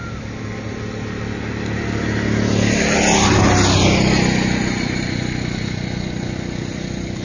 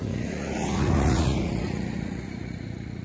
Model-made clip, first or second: second